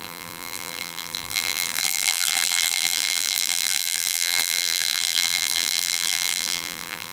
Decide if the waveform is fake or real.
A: fake